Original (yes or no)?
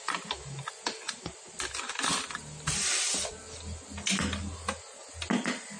yes